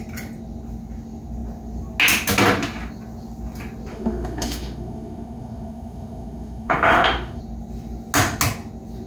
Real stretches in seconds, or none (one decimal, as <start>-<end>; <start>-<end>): 0.0-3.9; 7.4-9.1